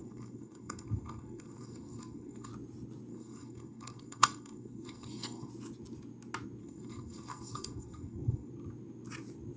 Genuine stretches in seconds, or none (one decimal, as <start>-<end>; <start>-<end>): 2.5-3.1; 5.5-6.6; 8.5-9.6